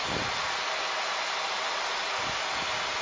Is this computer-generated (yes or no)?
no